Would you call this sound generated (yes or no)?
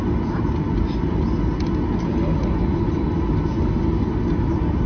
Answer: no